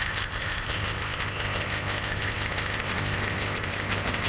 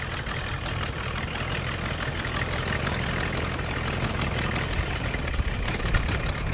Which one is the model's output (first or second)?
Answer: first